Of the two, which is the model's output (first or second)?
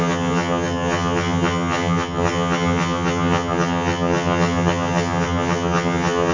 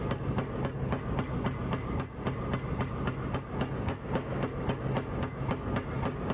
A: first